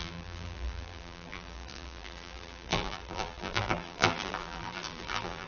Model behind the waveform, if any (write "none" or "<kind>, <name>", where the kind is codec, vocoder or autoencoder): vocoder, BigVGAN v2